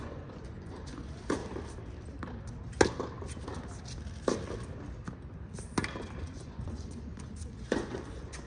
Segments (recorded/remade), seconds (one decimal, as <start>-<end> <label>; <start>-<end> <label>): 0.0-1.4 remade; 1.4-6.2 recorded; 6.2-8.5 remade